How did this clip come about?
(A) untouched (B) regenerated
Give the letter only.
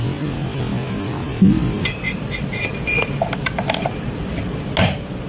A